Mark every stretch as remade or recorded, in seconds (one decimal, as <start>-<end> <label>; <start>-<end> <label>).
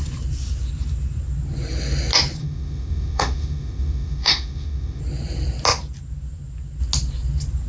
0.0-2.4 recorded; 2.4-5.0 remade; 5.0-7.7 recorded